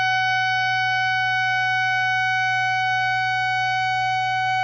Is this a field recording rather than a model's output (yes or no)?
yes